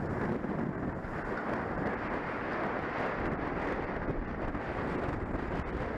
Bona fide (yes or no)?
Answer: yes